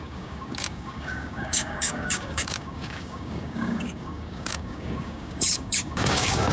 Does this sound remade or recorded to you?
remade